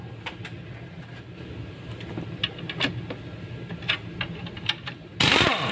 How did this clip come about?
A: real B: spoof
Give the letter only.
A